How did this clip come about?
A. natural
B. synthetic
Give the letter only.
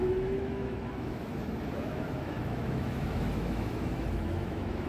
B